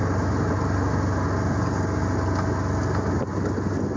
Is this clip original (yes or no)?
yes